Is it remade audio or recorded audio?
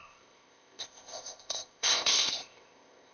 remade